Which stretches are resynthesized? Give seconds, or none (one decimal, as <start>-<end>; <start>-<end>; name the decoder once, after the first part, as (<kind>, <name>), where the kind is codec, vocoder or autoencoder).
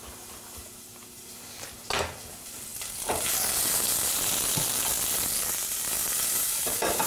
none